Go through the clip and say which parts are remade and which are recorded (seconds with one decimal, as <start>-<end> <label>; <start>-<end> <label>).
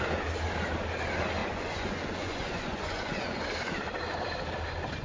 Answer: 0.0-1.4 recorded; 1.4-3.4 remade; 3.4-5.0 recorded